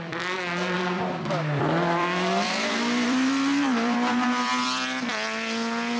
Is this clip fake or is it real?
fake